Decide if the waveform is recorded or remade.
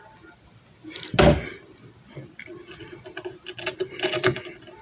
recorded